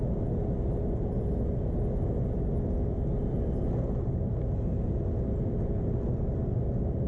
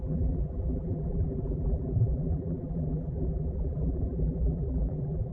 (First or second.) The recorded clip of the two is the first